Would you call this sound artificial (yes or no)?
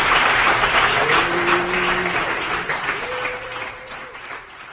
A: yes